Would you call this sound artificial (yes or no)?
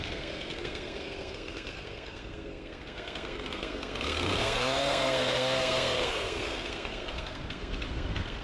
yes